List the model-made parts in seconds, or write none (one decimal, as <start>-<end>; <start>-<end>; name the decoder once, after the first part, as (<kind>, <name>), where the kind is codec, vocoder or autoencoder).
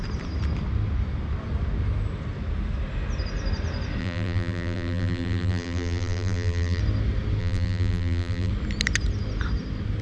4.0-6.8 (vocoder, BigVGAN v2); 7.4-8.5